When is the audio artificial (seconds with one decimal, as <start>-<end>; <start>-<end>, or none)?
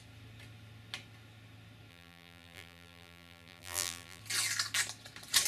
1.9-4.2